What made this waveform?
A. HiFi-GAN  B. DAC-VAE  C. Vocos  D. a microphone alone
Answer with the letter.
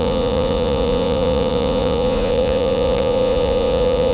C